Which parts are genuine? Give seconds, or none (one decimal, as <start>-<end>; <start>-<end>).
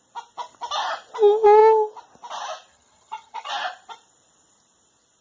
0.0-2.7; 3.5-5.2